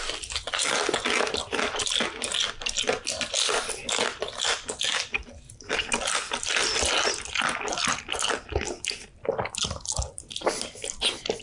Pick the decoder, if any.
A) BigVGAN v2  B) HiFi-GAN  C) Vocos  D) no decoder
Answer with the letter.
D